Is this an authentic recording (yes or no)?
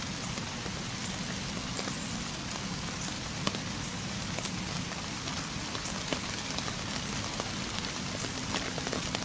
yes